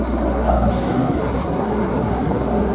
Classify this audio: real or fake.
fake